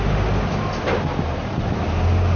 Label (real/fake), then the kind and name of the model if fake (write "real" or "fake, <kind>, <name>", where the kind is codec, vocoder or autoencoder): real